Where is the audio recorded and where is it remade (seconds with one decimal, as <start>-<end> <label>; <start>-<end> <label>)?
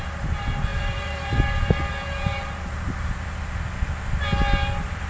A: 0.0-0.7 recorded; 0.7-3.4 remade; 3.4-5.1 recorded